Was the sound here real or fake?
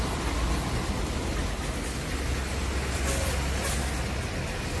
real